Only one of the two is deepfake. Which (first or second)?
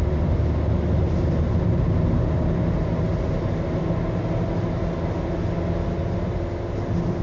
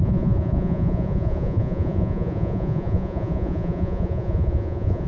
second